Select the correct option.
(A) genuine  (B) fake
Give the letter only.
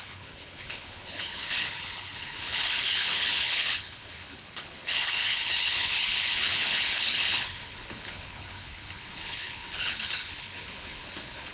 B